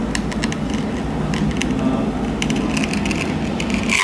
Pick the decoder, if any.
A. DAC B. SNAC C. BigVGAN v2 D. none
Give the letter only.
D